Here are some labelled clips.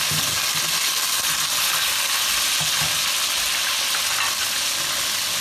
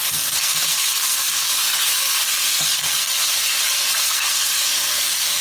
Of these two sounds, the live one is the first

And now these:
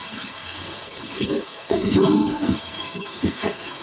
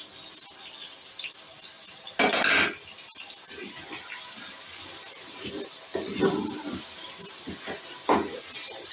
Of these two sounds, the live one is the second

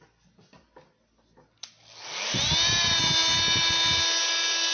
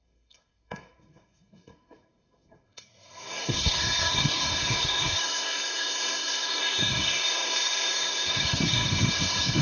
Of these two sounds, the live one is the first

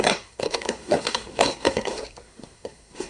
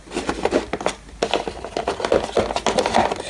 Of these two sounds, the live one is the second